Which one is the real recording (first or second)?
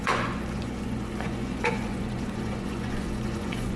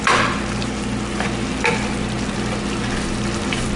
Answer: second